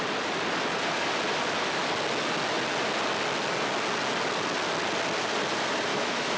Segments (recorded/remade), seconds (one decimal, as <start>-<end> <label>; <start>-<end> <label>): 0.0-5.9 recorded; 5.9-6.4 remade